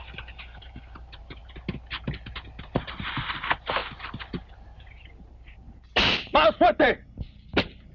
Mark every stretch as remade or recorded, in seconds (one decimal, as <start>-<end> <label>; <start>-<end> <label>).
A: 0.0-1.4 remade; 1.4-3.4 recorded; 3.4-7.9 remade

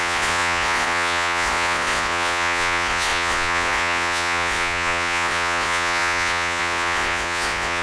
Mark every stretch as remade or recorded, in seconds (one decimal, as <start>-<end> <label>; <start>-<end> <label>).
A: 0.0-7.8 remade

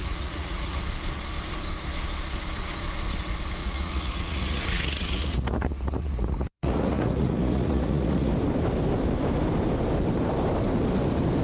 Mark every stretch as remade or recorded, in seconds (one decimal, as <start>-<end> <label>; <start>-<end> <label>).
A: 0.0-0.8 remade; 0.8-3.6 recorded; 3.6-8.3 remade; 8.3-11.4 recorded

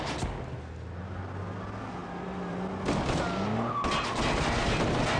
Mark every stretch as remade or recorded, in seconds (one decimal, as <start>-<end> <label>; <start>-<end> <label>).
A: 0.0-5.2 recorded

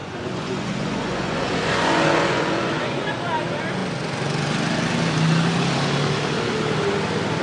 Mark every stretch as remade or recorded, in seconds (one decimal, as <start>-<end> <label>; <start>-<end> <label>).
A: 0.0-3.2 remade; 3.2-7.4 recorded

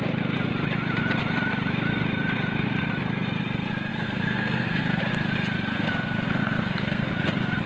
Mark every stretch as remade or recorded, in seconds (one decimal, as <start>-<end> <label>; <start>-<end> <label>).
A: 0.0-3.9 recorded; 3.9-5.0 remade; 5.0-5.7 recorded; 5.7-7.1 remade; 7.1-7.7 recorded

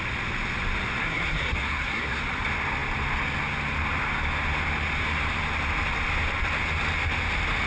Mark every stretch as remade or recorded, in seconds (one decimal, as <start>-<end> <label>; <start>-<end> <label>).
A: 0.0-1.0 recorded; 1.0-2.2 remade; 2.2-7.7 recorded